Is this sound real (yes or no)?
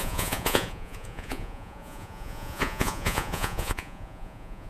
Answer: no